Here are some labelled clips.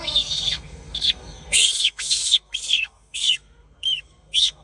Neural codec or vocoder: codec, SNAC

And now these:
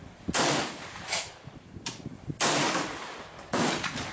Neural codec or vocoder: none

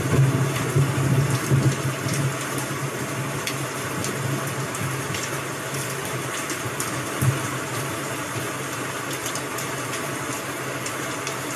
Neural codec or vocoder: none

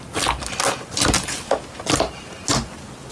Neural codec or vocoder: none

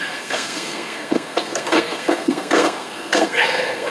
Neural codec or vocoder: codec, SNAC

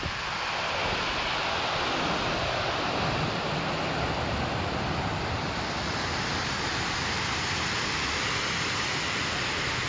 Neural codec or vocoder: none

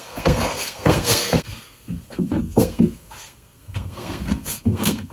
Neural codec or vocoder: codec, SNAC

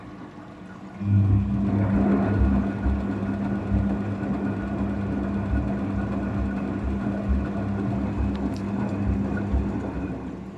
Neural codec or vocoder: none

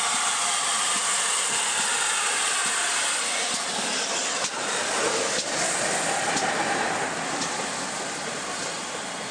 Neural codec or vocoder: none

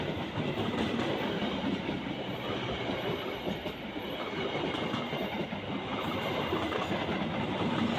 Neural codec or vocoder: none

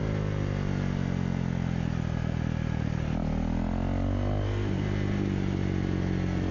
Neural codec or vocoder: none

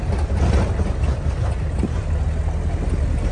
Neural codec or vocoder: none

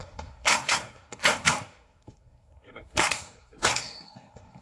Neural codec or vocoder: codec, SNAC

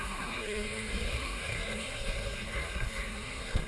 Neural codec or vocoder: codec, SNAC